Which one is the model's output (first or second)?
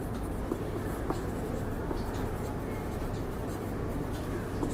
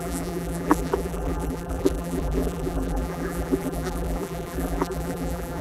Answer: second